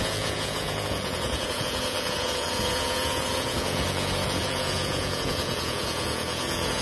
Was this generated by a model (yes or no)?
yes